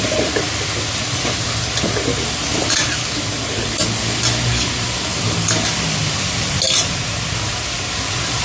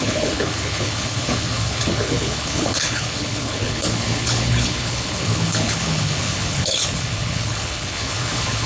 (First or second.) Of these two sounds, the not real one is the second